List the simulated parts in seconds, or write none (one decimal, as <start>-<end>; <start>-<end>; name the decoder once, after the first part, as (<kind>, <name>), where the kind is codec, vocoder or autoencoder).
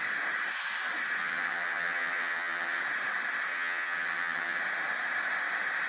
1.2-2.8 (vocoder, HiFi-GAN); 3.5-4.6